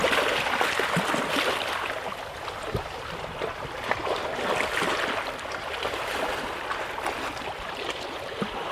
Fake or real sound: fake